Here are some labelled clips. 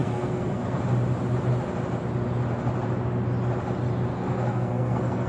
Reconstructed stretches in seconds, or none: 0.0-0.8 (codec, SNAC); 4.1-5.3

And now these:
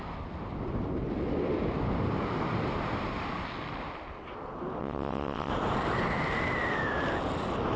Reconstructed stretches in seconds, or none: 4.8-5.5 (vocoder, WaveNeXt)

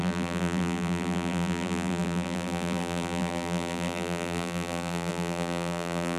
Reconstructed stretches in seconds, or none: 0.0-6.2 (vocoder, BigVGAN v2)